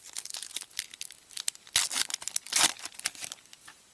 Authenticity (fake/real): real